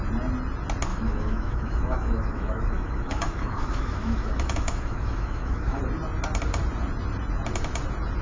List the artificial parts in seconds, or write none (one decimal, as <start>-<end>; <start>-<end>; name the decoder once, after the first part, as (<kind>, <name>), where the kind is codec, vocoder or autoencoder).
0.9-5.8 (autoencoder, DAC-VAE)

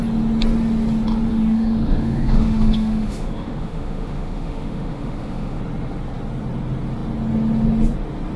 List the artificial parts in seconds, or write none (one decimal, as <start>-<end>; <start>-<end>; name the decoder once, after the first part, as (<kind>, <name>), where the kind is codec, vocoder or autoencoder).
1.3-5.6 (autoencoder, DAC-VAE)